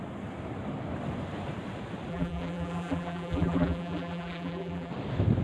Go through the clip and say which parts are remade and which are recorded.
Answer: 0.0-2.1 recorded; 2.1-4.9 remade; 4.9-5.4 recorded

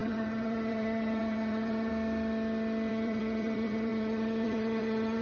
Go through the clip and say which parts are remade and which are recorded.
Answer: 0.0-1.9 remade; 1.9-2.9 recorded; 2.9-5.2 remade

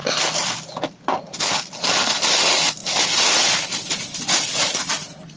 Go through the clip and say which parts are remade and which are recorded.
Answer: 0.0-5.4 recorded

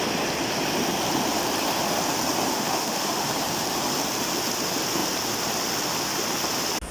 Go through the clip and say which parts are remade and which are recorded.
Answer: 0.0-2.5 recorded; 2.5-3.3 remade; 3.3-6.9 recorded